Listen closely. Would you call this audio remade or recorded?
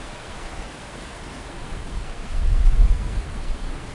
remade